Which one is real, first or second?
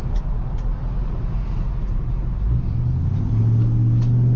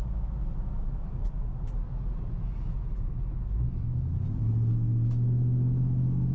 first